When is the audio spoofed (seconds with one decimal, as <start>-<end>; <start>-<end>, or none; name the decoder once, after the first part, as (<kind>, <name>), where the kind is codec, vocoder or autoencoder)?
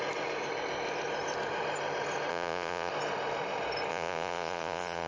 2.3-2.9 (vocoder, Vocos); 3.9-5.1